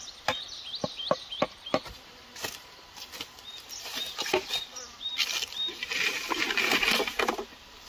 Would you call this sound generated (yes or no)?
no